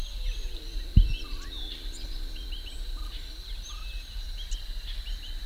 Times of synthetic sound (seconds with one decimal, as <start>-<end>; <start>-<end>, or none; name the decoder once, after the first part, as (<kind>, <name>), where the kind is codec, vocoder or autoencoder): none

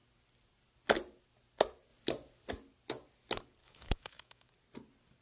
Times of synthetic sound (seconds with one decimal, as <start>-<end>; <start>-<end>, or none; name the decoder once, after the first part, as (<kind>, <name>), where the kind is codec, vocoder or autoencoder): 3.6-4.5 (autoencoder, DAC-VAE)